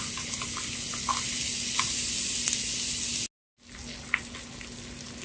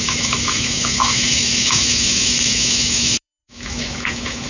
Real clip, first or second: first